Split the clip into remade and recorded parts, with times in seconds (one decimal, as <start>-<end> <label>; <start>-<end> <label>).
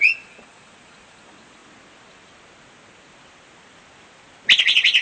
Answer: 0.0-1.6 remade; 1.6-4.6 recorded; 4.6-5.0 remade